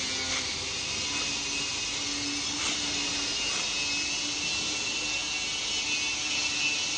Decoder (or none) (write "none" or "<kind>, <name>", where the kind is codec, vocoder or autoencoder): none